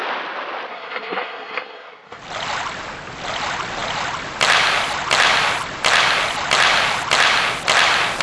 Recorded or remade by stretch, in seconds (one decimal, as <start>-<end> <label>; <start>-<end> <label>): 0.0-0.7 recorded; 0.7-2.2 remade; 2.2-8.2 recorded